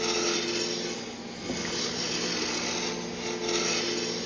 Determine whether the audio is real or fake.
real